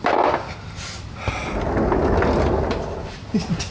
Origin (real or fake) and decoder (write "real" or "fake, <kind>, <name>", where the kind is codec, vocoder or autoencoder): real